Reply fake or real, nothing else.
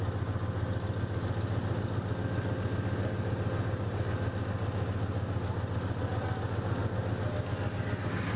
real